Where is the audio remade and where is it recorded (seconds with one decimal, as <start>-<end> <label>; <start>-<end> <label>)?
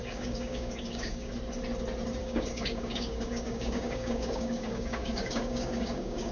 0.0-1.3 remade; 1.3-2.2 recorded; 2.2-6.3 remade